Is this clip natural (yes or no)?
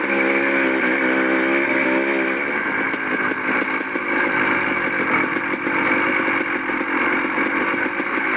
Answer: yes